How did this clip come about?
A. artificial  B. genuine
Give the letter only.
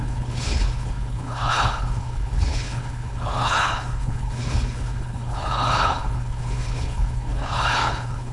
A